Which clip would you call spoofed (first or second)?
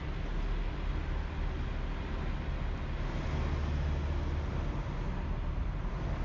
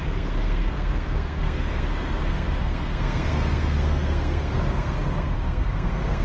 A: second